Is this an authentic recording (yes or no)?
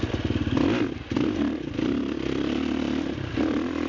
yes